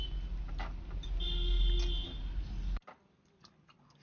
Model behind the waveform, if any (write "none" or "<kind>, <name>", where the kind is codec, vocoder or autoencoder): none